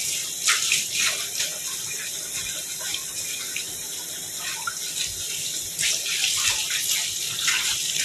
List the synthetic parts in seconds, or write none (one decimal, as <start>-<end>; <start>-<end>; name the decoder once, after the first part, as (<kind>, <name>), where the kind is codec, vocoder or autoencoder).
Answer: none